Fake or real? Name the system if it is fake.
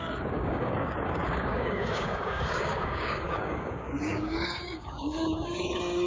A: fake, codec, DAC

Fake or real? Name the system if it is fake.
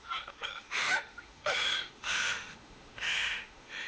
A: fake, autoencoder, DAC-VAE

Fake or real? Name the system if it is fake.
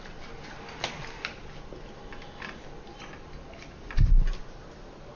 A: real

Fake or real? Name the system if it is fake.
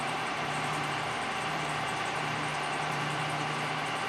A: fake, vocoder, BigVGAN v2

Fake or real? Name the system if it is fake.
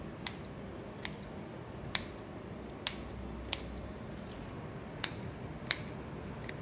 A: real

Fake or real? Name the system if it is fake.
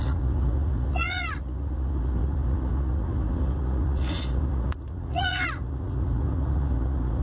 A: fake, vocoder, Vocos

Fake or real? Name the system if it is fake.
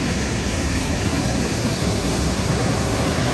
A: fake, codec, SNAC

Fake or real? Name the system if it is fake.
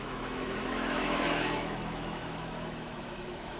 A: fake, autoencoder, DAC-VAE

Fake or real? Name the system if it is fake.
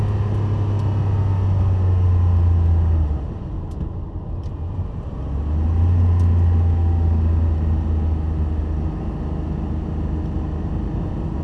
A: real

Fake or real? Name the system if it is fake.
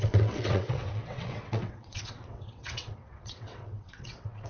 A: fake, vocoder, WaveNeXt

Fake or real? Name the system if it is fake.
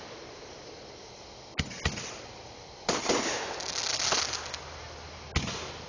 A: real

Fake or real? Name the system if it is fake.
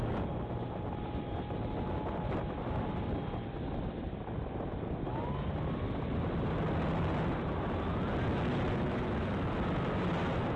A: real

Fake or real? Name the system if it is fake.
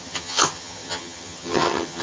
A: fake, vocoder, HiFi-GAN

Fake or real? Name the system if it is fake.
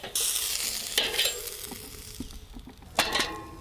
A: real